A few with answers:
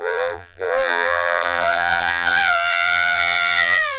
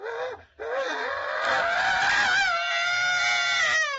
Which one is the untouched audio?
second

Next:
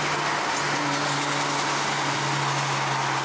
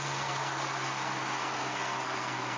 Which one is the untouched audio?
first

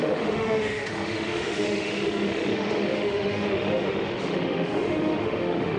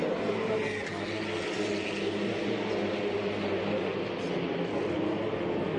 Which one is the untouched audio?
second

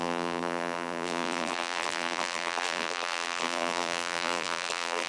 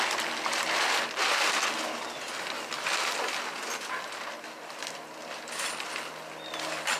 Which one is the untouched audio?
second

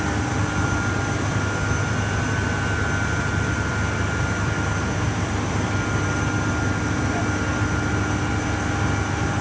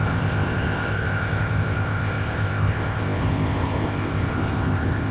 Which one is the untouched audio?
first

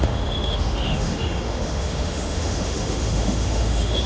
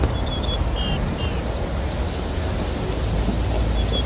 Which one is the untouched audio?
second